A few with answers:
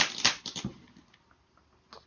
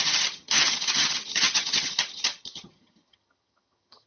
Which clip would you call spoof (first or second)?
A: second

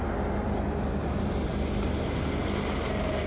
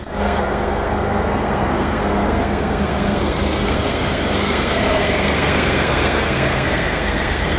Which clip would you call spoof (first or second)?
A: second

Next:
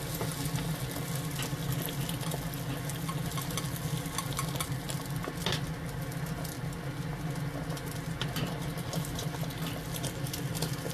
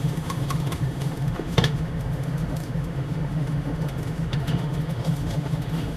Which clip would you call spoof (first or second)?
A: second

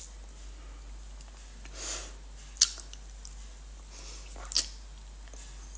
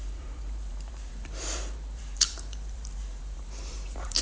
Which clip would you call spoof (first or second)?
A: second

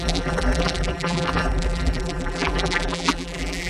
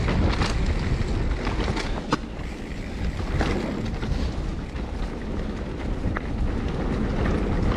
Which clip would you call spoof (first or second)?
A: first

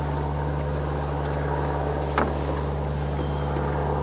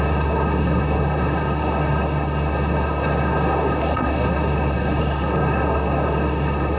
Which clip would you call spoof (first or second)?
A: second